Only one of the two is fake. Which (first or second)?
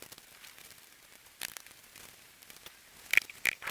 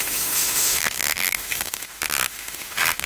second